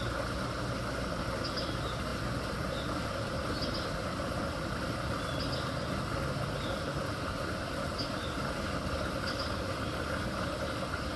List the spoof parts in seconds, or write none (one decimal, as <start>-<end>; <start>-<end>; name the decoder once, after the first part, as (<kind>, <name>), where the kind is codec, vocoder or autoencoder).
none